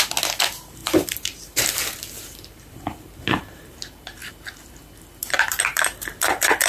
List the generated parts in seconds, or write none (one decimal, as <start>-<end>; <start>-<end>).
0.8-4.3; 5.2-6.7